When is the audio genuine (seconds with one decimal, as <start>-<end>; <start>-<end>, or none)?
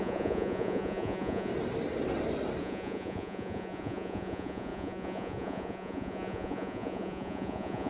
1.5-2.6